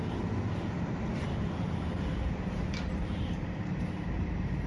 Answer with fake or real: fake